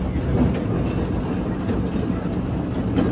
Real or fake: real